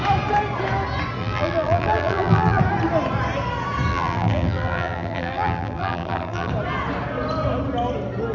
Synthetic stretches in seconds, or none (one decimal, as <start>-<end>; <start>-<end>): 1.2-2.6; 3.9-6.5